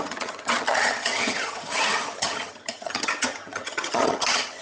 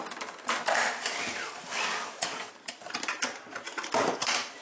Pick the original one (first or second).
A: second